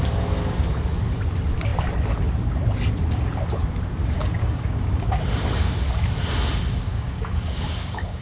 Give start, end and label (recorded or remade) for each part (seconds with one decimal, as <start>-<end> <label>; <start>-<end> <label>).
0.0-4.0 recorded; 4.0-5.2 remade; 5.2-6.9 recorded; 6.9-8.2 remade